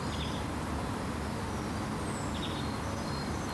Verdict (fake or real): real